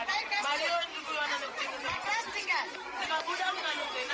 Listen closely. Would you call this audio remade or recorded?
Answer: remade